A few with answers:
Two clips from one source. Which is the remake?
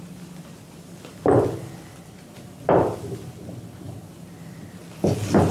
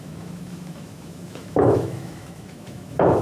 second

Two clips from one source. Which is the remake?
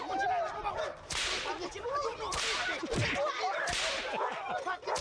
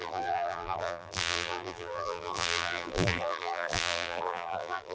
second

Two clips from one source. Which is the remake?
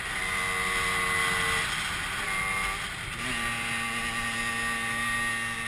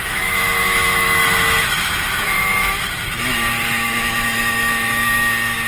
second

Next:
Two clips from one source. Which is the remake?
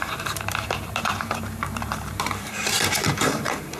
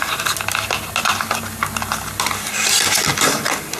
first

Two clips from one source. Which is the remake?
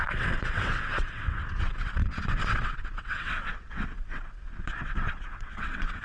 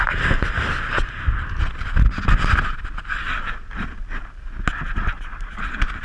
first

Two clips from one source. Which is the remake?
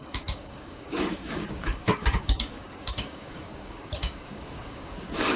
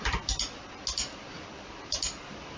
first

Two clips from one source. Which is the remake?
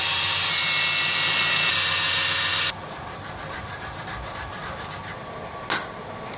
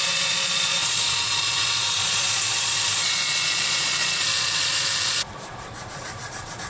second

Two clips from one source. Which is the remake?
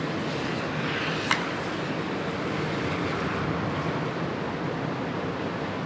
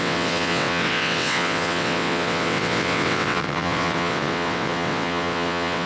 second